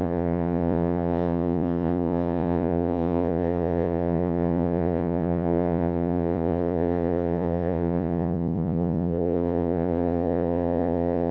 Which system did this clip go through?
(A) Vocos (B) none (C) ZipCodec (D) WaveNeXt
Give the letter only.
A